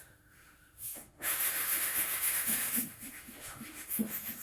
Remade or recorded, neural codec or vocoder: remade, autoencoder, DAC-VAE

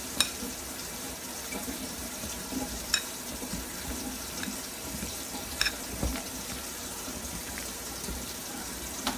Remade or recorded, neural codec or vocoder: remade, vocoder, BigVGAN v2